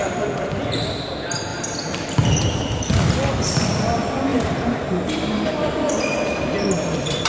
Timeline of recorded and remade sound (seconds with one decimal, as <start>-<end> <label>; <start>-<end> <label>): 0.0-1.5 recorded; 1.5-2.9 remade; 2.9-4.3 recorded; 4.3-5.9 remade; 5.9-7.3 recorded